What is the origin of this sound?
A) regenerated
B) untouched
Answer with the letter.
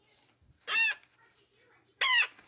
B